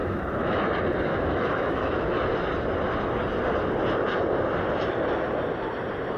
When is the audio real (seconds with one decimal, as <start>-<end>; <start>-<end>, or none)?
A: 0.6-1.1; 2.1-6.2

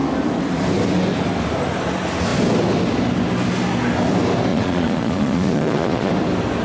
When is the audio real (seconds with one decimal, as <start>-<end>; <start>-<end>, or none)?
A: 0.0-4.5; 6.1-6.6

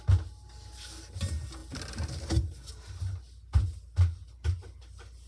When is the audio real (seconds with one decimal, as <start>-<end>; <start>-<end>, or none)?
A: 0.0-5.3

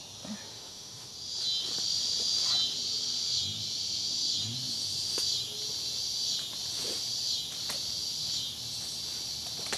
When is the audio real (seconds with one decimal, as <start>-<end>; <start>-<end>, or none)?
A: 0.0-0.5; 1.1-9.8